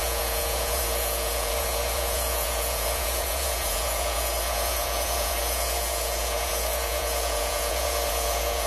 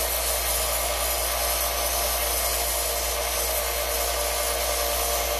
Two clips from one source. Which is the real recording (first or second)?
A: second